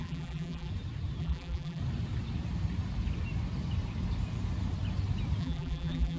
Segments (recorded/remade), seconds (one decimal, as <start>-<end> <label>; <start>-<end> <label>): 0.0-0.7 remade; 0.7-1.2 recorded; 1.2-1.8 remade; 1.8-5.4 recorded; 5.4-6.2 remade